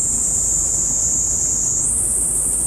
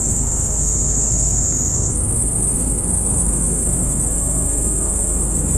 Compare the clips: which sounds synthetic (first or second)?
second